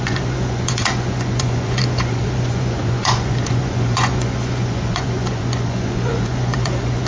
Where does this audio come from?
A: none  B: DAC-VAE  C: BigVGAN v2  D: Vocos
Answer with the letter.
D